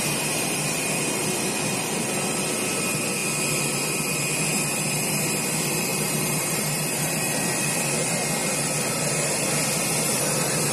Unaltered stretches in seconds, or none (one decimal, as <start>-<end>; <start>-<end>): 0.0-5.9; 7.1-10.7